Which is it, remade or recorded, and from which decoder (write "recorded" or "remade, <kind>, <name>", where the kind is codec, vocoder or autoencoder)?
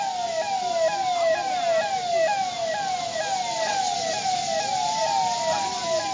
recorded